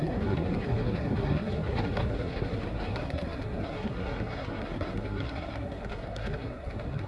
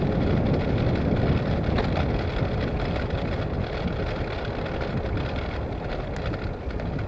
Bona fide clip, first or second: second